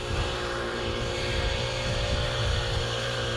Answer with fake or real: fake